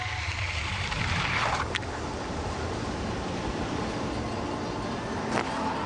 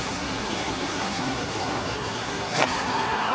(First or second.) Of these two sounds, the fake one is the second